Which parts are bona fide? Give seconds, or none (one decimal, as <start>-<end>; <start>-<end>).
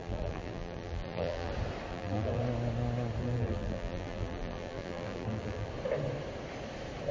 1.5-1.9; 2.4-3.2; 5.7-7.1